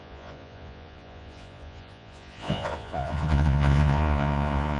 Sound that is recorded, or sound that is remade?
remade